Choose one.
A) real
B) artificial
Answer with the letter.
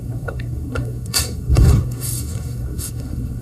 B